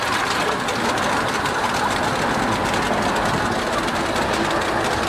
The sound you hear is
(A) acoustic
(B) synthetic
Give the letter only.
A